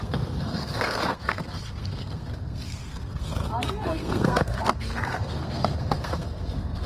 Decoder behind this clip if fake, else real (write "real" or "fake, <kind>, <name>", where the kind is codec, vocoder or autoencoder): fake, codec, SNAC